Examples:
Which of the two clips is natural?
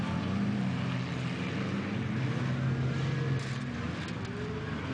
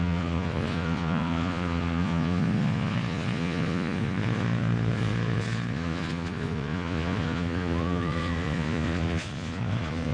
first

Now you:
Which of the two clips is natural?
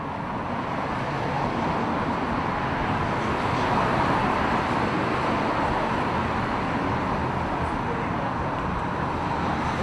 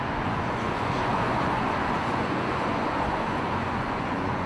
first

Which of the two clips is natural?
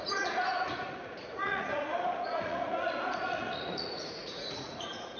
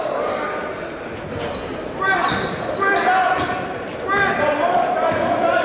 second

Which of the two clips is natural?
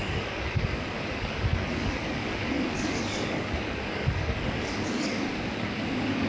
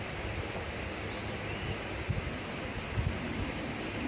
second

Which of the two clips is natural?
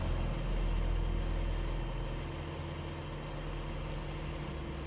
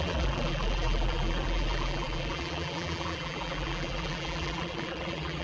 first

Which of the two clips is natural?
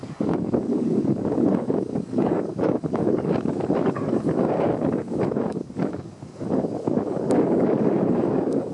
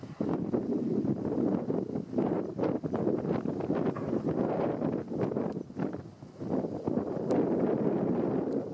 second